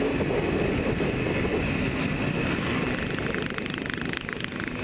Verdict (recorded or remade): recorded